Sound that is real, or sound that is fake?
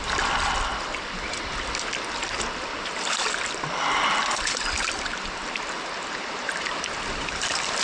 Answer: real